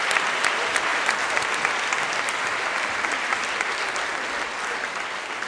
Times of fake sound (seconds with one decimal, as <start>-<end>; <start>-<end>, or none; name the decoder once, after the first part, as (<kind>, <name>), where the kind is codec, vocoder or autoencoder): none